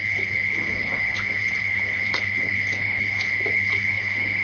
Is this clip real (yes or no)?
no